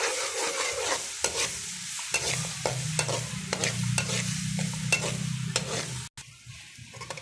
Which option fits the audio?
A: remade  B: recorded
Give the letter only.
B